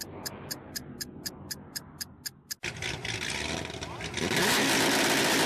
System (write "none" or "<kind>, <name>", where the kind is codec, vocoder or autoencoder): none